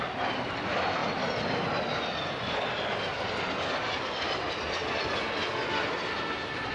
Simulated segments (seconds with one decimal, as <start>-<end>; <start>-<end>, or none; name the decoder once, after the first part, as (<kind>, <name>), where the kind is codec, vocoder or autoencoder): none